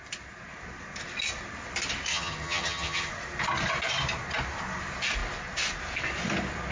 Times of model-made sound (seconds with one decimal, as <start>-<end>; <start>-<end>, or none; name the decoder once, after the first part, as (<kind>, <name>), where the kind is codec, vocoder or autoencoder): 2.1-3.1 (vocoder, HiFi-GAN)